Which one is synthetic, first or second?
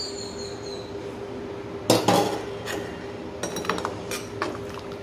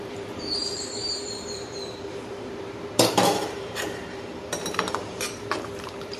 second